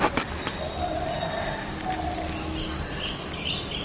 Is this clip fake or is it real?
real